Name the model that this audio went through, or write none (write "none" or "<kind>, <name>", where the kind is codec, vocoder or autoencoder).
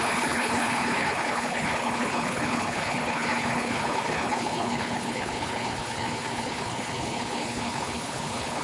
codec, HILCodec